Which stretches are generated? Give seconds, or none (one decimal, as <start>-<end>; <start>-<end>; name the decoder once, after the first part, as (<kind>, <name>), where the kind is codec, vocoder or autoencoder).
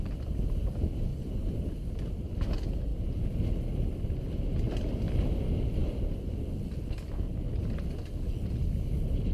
1.1-2.3 (vocoder, BigVGAN v2)